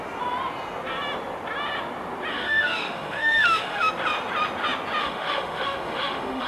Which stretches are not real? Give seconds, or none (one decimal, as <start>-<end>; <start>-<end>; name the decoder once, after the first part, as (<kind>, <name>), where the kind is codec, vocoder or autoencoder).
2.3-3.9 (autoencoder, DAC-VAE); 5.0-6.5